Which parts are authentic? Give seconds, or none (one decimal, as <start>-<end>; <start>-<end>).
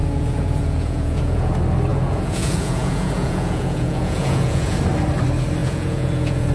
1.5-1.9; 4.8-5.6